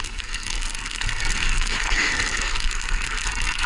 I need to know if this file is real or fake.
fake